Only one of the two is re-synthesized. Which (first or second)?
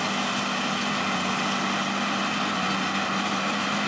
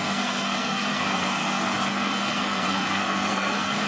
second